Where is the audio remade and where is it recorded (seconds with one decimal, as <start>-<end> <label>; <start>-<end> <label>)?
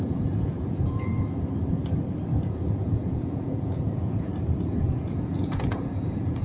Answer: 0.0-1.1 remade; 1.1-2.3 recorded; 2.3-4.3 remade; 4.3-4.8 recorded; 4.8-6.4 remade